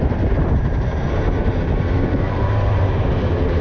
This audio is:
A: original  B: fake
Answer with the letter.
B